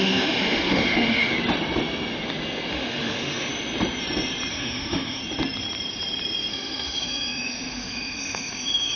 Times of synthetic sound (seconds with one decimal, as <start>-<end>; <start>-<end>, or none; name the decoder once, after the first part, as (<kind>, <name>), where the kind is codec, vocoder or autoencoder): 0.0-1.3 (autoencoder, DAC-VAE); 2.7-3.5; 4.5-5.2; 6.5-9.0